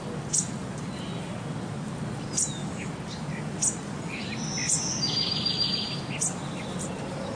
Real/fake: real